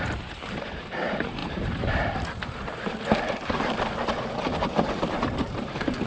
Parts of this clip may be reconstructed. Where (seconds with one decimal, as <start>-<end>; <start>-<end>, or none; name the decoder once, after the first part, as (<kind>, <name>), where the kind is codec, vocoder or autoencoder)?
0.0-6.1 (vocoder, BigVGAN v2)